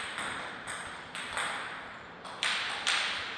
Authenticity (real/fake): real